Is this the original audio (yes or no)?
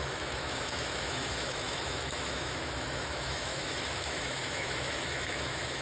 no